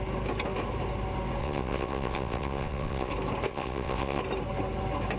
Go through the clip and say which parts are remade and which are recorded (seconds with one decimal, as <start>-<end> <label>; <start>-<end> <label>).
0.0-1.4 recorded; 1.4-3.1 remade; 3.1-3.5 recorded; 3.5-4.2 remade; 4.2-5.2 recorded